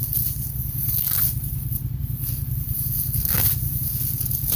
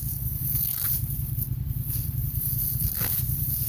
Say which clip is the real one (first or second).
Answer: first